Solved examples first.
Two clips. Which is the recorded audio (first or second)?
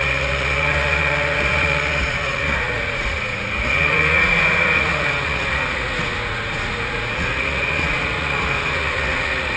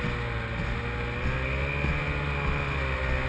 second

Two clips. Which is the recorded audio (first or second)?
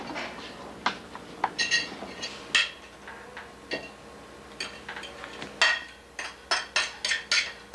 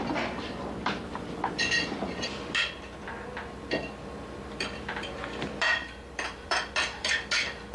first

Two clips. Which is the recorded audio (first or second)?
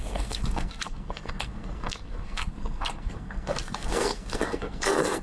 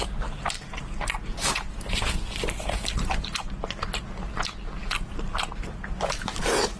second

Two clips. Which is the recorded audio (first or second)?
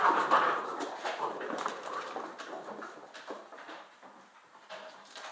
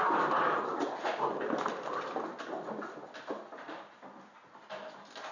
second